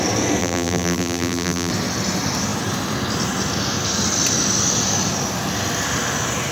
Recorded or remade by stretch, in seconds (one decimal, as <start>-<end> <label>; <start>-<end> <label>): 0.0-0.4 recorded; 0.4-1.7 remade; 1.7-6.5 recorded